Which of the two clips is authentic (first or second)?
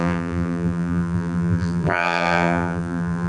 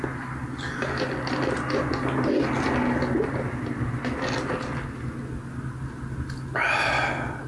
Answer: second